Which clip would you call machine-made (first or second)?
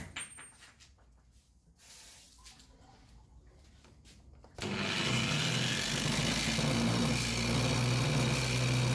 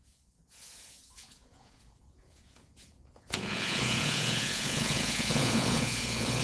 second